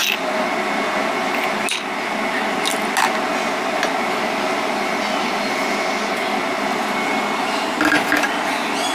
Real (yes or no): yes